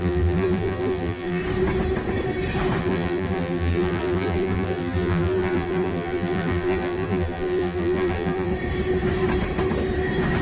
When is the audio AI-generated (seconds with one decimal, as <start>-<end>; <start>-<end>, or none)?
0.0-1.4; 2.8-8.5